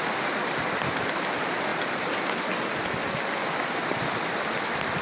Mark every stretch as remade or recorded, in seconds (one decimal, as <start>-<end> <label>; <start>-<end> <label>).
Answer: 0.0-1.7 recorded; 1.7-2.6 remade; 2.6-5.0 recorded